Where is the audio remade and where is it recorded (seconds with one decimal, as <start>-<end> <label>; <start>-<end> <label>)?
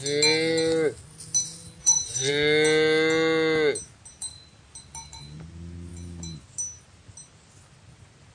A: 0.0-1.8 recorded; 1.8-2.3 remade; 2.3-8.3 recorded